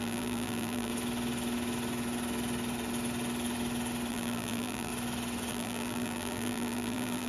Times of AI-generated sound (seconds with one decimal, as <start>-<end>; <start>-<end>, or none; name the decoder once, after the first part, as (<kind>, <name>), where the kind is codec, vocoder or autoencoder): 0.0-0.9 (vocoder, BigVGAN v2); 4.1-4.9; 5.5-7.3